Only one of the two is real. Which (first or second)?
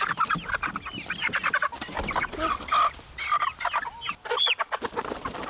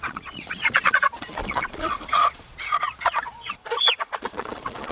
first